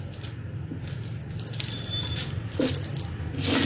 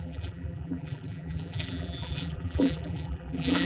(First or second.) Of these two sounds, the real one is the first